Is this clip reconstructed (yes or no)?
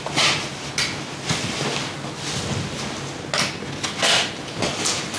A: no